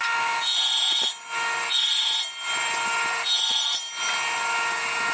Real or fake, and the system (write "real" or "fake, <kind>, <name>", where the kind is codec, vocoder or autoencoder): real